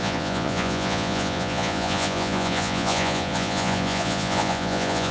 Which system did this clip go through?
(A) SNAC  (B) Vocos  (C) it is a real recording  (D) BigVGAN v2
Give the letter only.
B